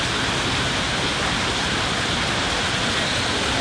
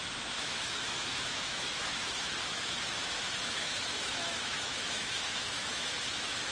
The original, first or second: first